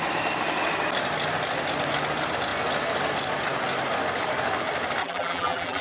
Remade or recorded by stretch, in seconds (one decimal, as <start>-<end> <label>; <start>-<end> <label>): 0.0-5.0 recorded; 5.0-5.8 remade